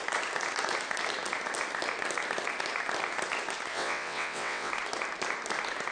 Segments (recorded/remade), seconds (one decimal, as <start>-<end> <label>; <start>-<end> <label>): 0.0-3.7 recorded; 3.7-4.7 remade; 4.7-5.9 recorded